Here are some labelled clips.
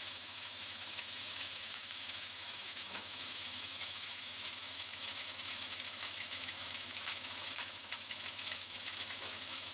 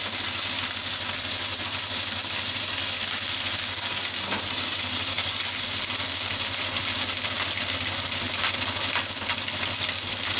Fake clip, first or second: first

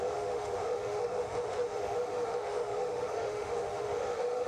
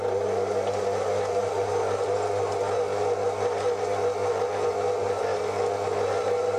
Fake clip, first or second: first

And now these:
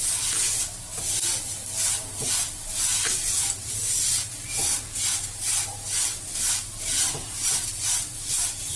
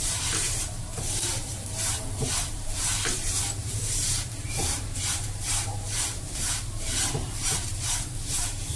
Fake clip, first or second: second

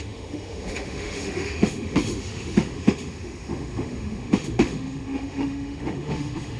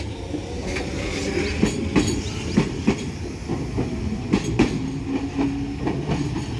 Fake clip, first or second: first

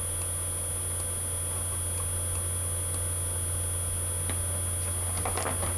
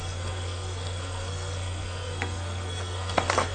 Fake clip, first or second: second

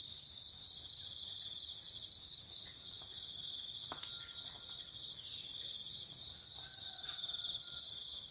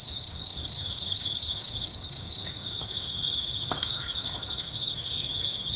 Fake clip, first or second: second